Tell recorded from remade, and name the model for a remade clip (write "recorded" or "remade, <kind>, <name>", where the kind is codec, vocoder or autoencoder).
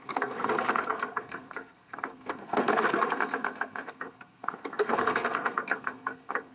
remade, codec, SNAC